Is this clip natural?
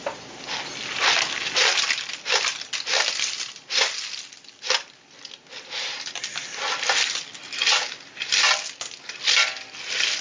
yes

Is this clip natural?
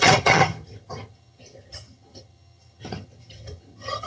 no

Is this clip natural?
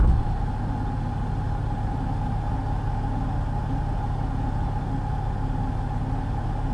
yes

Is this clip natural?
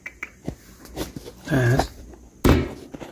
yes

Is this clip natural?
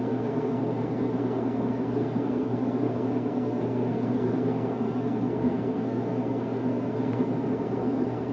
no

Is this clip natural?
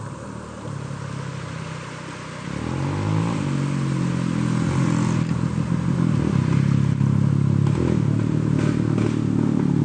yes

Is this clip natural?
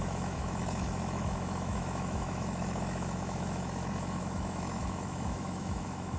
no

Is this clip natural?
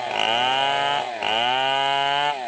yes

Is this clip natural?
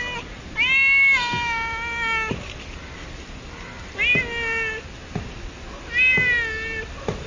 yes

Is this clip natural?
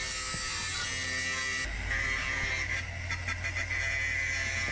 yes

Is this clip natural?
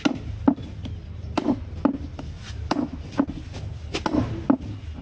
yes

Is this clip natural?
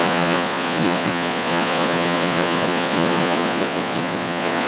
no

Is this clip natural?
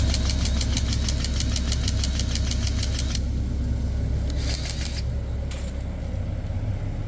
yes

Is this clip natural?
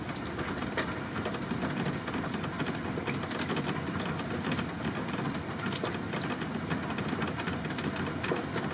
yes